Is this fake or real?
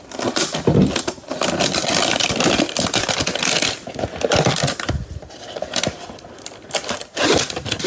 real